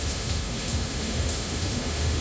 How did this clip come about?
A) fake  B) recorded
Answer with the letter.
A